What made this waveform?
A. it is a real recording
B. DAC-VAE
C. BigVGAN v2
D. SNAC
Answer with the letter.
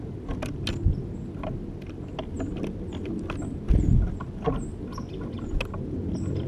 A